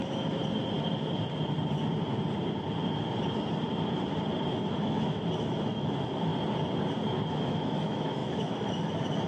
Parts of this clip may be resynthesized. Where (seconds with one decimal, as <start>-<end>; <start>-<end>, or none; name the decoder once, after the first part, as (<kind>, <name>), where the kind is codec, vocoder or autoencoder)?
0.0-0.4 (autoencoder, DAC-VAE); 4.5-6.3; 7.3-9.3